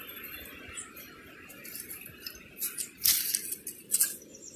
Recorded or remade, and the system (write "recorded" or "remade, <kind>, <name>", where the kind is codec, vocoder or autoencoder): recorded